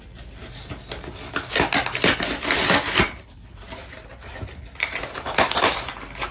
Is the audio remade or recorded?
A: recorded